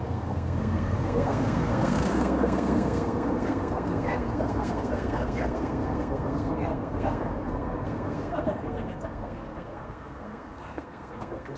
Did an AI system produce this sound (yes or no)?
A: yes